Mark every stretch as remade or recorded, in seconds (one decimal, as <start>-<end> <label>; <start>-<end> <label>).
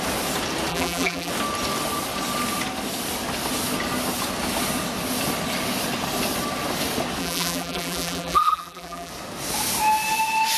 0.0-0.7 recorded; 0.7-1.3 remade; 1.3-7.2 recorded; 7.2-9.1 remade; 9.1-10.6 recorded